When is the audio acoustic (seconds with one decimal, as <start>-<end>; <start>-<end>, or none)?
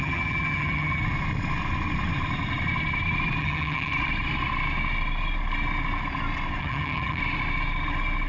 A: 1.0-3.4; 3.9-6.6; 7.2-8.3